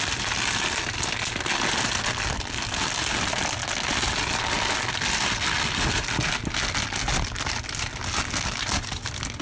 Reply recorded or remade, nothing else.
recorded